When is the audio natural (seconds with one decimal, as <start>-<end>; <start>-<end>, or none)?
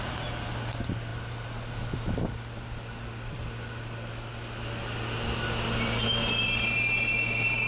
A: 0.0-7.7